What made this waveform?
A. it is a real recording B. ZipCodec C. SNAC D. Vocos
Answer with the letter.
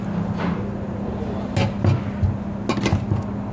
A